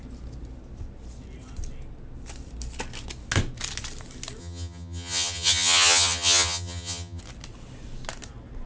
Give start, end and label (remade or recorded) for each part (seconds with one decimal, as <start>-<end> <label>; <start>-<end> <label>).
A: 0.0-4.4 recorded; 4.4-7.2 remade; 7.2-8.7 recorded